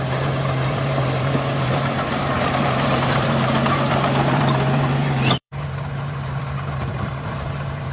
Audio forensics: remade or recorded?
remade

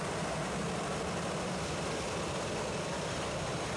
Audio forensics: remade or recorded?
remade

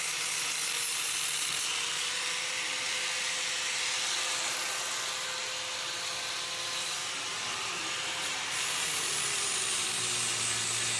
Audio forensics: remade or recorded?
recorded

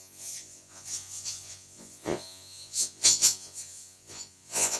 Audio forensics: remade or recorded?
remade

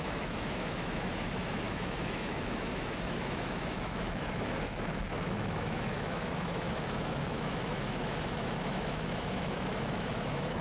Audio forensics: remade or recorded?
remade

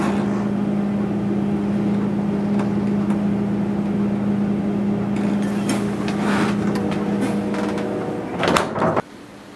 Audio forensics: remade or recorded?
recorded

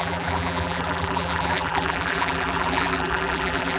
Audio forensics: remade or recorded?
remade